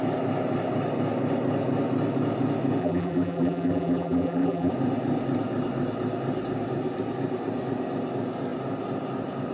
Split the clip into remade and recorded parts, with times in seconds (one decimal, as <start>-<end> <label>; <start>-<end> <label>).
0.0-2.8 recorded; 2.8-4.7 remade; 4.7-9.5 recorded